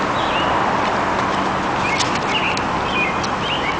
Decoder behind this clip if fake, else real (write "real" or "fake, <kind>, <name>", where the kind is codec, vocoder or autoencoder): real